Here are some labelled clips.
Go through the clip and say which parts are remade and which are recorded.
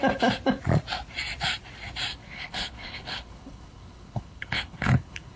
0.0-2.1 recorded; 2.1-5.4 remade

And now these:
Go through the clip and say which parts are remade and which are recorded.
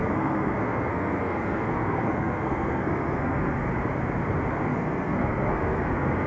0.0-3.7 remade; 3.7-4.5 recorded; 4.5-6.3 remade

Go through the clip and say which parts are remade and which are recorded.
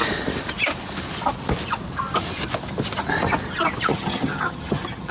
0.0-3.9 recorded; 3.9-5.1 remade